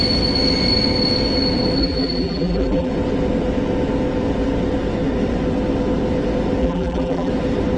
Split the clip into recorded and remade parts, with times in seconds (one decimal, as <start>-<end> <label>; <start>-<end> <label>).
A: 0.0-1.8 recorded; 1.8-2.9 remade; 2.9-6.6 recorded; 6.6-7.3 remade; 7.3-7.8 recorded